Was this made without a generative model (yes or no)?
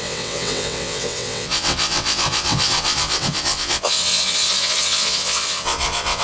no